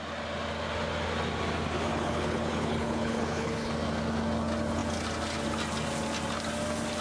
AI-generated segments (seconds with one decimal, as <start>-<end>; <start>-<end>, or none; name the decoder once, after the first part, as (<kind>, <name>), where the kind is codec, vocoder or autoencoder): 1.9-3.7 (codec, HILCodec)